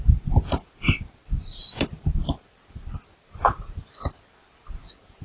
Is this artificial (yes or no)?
no